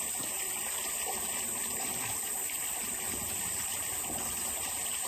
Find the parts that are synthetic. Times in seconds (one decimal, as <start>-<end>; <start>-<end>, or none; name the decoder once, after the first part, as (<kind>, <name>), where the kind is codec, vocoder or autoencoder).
none